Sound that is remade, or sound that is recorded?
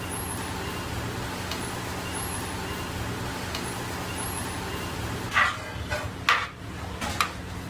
recorded